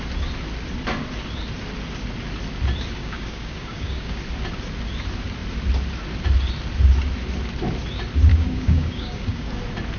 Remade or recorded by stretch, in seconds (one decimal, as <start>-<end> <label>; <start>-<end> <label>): 0.0-3.0 recorded; 3.0-4.2 remade; 4.2-8.3 recorded; 8.3-9.5 remade; 9.5-10.0 recorded